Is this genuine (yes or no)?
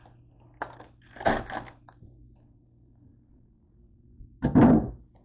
yes